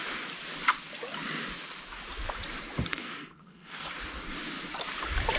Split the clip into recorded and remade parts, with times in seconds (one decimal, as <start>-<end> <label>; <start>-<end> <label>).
0.0-2.9 recorded; 2.9-3.9 remade; 3.9-5.4 recorded

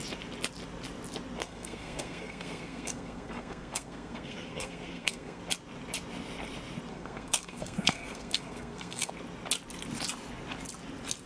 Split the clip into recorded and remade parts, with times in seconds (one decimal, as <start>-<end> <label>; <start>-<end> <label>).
0.0-1.4 recorded; 1.4-5.4 remade; 5.4-6.9 recorded; 6.9-9.1 remade; 9.1-11.3 recorded

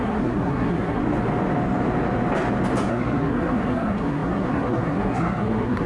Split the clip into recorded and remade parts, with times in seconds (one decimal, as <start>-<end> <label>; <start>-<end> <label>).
0.0-1.0 remade; 1.0-2.9 recorded; 2.9-5.9 remade

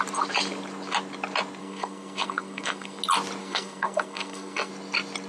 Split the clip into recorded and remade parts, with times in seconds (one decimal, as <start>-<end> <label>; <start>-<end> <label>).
0.0-1.6 recorded; 1.6-3.0 remade; 3.0-3.4 recorded; 3.4-4.7 remade; 4.7-5.3 recorded

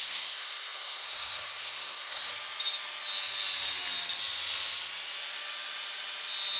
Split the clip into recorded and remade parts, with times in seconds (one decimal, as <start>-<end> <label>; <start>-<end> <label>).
0.0-2.3 remade; 2.3-6.6 recorded

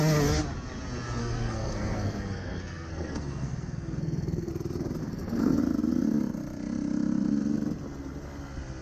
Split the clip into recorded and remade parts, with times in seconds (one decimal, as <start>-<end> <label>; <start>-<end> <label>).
0.0-1.2 recorded; 1.2-4.5 remade; 4.5-5.0 recorded; 5.0-5.6 remade; 5.6-8.8 recorded

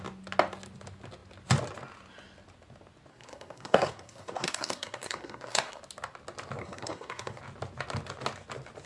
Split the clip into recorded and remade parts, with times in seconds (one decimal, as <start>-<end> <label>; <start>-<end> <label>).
0.0-3.1 recorded; 3.1-5.8 remade; 5.8-6.6 recorded; 6.6-7.4 remade; 7.4-8.9 recorded

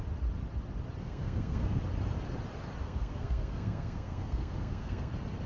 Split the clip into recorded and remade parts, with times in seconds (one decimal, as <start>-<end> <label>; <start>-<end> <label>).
0.0-1.0 recorded; 1.0-1.8 remade; 1.8-2.8 recorded; 2.8-5.1 remade; 5.1-5.5 recorded